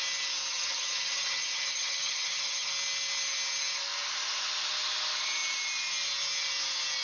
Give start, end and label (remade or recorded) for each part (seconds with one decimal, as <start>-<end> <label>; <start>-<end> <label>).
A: 0.0-0.5 recorded; 0.5-2.7 remade; 2.7-7.0 recorded